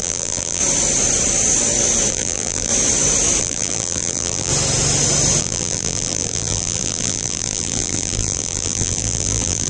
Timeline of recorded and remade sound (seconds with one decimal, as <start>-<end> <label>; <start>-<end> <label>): 0.0-0.6 remade; 0.6-2.1 recorded; 2.1-2.7 remade; 2.7-3.4 recorded; 3.4-4.5 remade; 4.5-5.4 recorded; 5.4-9.7 remade